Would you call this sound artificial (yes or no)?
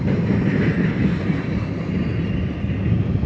no